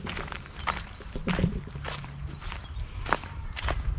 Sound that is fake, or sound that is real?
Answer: fake